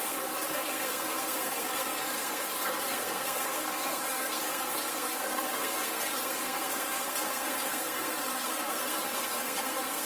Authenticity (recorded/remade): remade